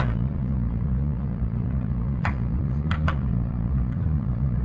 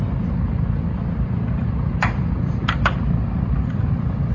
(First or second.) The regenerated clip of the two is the first